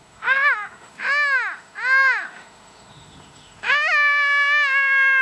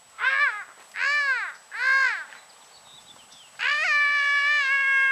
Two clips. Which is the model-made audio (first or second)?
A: first